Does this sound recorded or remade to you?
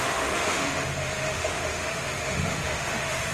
remade